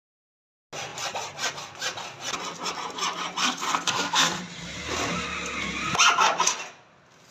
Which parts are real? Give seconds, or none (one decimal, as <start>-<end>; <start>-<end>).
0.0-3.4; 4.4-7.3